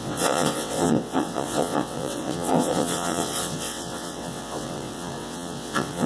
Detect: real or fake fake